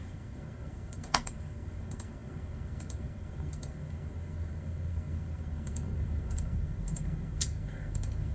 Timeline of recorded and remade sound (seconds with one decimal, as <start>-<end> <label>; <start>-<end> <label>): 0.0-8.3 remade

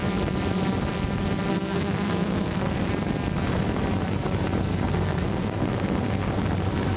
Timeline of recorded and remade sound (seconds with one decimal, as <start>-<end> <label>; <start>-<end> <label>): 0.0-1.5 recorded; 1.5-2.9 remade; 2.9-4.7 recorded; 4.7-6.3 remade; 6.3-7.0 recorded

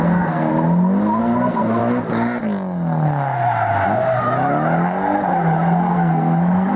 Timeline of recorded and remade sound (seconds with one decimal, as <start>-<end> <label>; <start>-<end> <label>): 0.0-0.5 remade; 0.5-1.2 recorded; 1.2-1.8 remade; 1.8-5.9 recorded; 5.9-6.8 remade